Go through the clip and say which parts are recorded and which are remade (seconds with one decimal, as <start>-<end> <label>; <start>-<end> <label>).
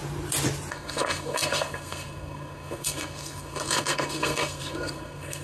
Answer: 0.0-0.7 recorded; 0.7-5.4 remade